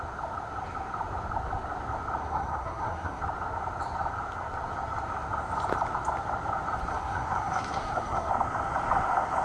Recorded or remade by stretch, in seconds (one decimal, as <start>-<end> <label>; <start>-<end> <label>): 0.0-2.2 recorded; 2.2-3.2 remade; 3.2-6.9 recorded; 6.9-8.3 remade; 8.3-9.4 recorded